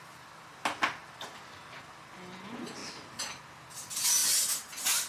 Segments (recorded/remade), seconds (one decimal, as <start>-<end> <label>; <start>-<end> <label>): 0.0-5.1 recorded